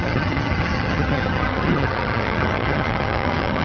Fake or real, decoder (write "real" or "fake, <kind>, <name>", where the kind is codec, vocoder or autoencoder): fake, vocoder, HiFi-GAN